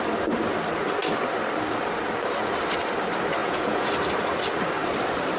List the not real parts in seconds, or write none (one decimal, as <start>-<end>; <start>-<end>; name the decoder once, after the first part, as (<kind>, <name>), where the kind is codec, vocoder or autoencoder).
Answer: 3.4-3.9 (vocoder, Vocos)